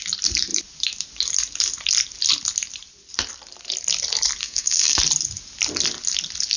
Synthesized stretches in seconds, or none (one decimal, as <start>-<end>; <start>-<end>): 4.4-5.0